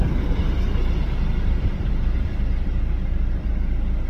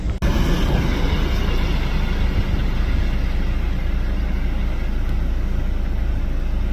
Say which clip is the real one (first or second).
second